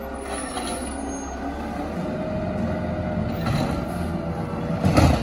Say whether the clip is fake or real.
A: real